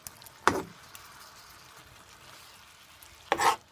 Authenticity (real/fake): real